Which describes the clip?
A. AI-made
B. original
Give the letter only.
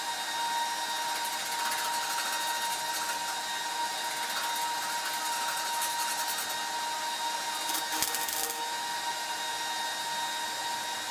B